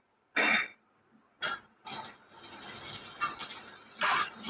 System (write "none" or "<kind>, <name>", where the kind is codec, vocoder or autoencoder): none